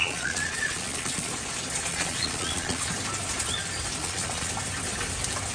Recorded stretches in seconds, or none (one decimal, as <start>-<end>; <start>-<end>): 1.3-1.9; 2.9-4.0; 4.5-5.5